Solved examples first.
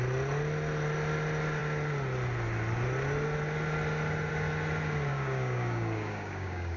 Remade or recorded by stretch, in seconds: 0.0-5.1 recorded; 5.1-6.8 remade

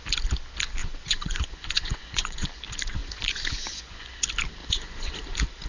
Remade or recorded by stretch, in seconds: 0.0-0.8 recorded; 0.8-2.6 remade; 2.6-3.0 recorded; 3.0-4.1 remade; 4.1-4.6 recorded; 4.6-5.1 remade; 5.1-5.7 recorded

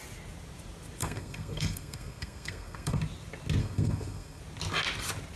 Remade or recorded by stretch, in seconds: 0.0-1.0 recorded; 1.0-3.0 remade; 3.0-3.6 recorded; 3.6-4.4 remade; 4.4-5.4 recorded

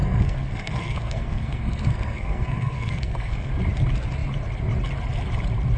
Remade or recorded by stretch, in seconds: 0.0-3.5 remade; 3.5-5.8 recorded